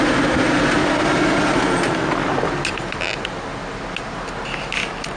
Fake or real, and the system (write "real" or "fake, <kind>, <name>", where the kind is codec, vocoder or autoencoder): real